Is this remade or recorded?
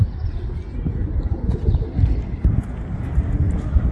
recorded